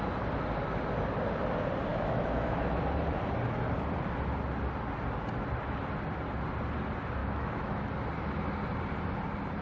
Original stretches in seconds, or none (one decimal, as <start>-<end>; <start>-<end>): 0.0-1.9; 2.8-7.2; 7.9-9.6